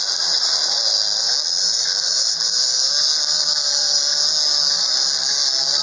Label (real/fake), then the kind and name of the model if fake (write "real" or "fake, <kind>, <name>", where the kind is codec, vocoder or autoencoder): real